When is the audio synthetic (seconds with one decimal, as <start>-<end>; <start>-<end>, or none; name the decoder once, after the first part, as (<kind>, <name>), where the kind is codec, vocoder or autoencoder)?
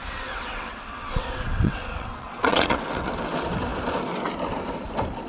0.0-3.1 (vocoder, WaveNeXt)